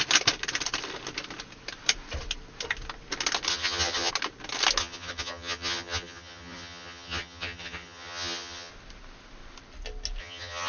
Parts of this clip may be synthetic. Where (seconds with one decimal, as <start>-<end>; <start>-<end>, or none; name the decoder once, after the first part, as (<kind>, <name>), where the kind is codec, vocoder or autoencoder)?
3.5-4.1 (vocoder, HiFi-GAN); 4.8-8.7; 10.2-10.7